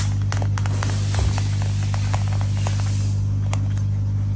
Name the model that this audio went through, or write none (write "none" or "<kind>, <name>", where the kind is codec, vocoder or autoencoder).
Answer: none